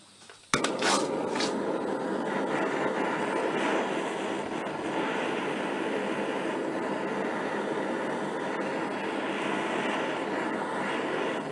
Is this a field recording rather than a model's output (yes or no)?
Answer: yes